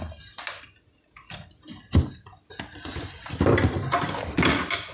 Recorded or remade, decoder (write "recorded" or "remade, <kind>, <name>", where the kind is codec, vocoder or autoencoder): recorded